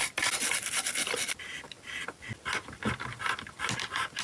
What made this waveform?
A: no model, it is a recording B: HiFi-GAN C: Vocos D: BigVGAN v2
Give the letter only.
A